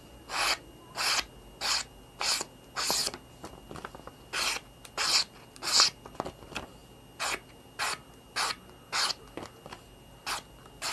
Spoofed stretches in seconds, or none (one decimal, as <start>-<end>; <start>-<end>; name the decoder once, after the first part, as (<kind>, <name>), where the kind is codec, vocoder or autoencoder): none